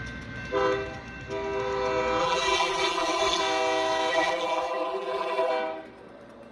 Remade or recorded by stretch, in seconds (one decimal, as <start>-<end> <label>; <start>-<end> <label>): 0.0-2.2 recorded; 2.2-3.4 remade; 3.4-4.1 recorded; 4.1-5.5 remade; 5.5-6.5 recorded